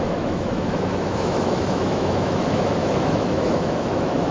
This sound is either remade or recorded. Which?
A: remade